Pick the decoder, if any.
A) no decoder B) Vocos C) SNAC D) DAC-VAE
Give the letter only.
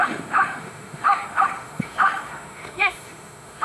D